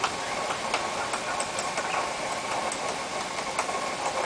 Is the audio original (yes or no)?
yes